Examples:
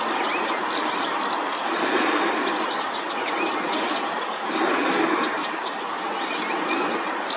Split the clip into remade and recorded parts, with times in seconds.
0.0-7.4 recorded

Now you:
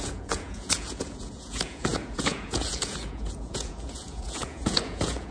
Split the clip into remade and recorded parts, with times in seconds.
0.0-5.3 remade